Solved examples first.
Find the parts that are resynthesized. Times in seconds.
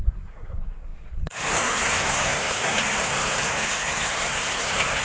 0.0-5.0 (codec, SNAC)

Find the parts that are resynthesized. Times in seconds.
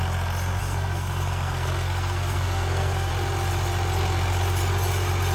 0.6-3.1 (codec, SNAC)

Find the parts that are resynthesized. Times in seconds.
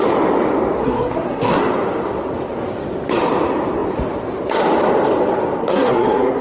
0.8-1.6 (codec, SNAC); 5.6-6.4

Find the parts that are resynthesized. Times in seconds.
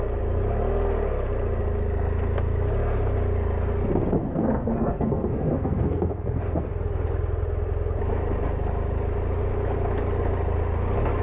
4.2-6.7 (codec, SNAC)